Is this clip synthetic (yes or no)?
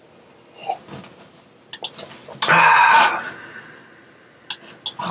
no